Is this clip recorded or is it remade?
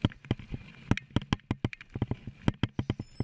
recorded